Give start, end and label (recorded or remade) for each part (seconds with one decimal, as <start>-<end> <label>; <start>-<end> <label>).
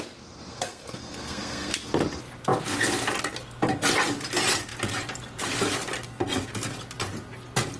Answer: 0.0-0.5 recorded; 0.5-1.7 remade; 1.7-7.8 recorded